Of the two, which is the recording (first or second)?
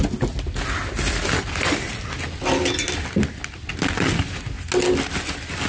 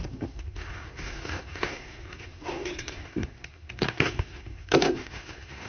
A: first